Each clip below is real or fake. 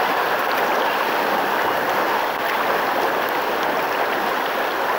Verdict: real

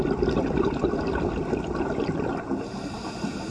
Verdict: real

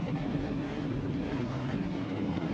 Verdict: fake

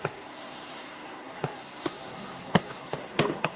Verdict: fake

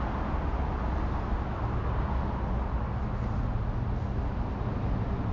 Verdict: real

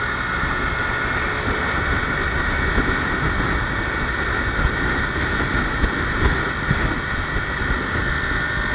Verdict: real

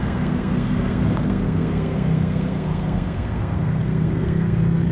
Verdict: fake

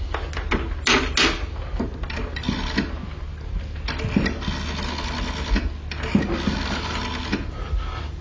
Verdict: real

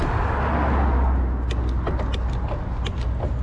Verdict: real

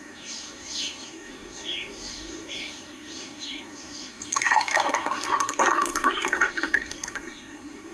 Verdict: fake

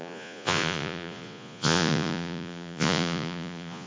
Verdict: fake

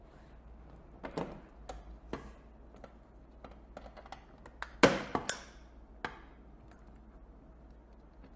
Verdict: real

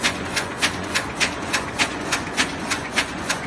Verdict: fake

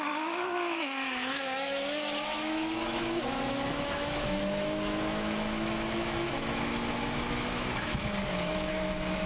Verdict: fake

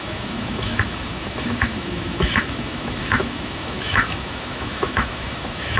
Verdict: fake